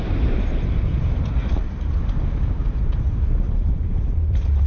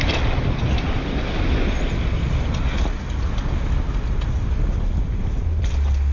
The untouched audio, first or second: second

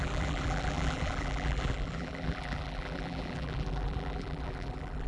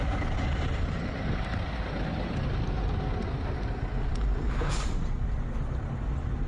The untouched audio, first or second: second